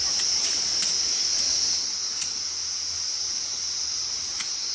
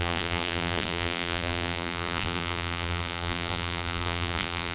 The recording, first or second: first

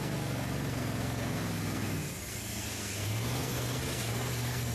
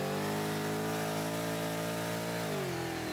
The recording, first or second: second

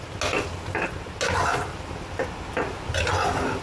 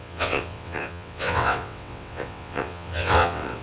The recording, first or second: first